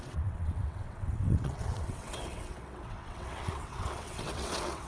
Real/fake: fake